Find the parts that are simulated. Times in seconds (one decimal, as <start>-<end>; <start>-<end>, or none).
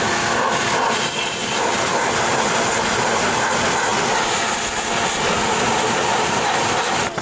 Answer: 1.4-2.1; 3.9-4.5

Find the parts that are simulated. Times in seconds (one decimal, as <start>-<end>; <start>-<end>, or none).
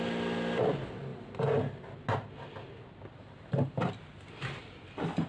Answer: none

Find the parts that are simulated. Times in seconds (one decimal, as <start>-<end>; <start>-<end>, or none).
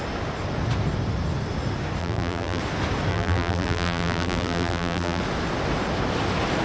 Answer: 2.0-2.6; 3.1-5.2